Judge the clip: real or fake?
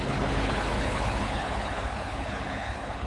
fake